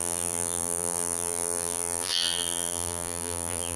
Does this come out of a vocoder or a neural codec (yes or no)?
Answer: yes